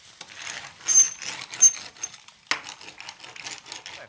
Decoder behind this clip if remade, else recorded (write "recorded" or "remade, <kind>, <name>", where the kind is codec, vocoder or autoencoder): recorded